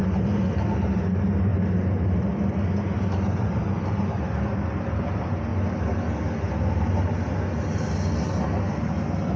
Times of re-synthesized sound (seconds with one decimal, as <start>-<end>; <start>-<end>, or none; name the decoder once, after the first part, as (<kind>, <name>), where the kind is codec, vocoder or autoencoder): none